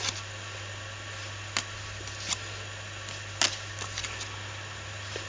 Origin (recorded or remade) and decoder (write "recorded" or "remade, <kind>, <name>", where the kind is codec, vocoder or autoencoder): recorded